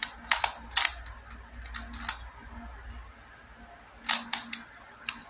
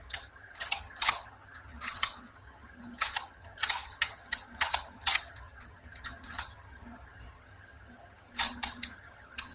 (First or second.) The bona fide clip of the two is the first